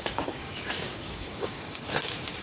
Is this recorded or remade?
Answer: remade